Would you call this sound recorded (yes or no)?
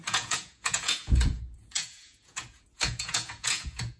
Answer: no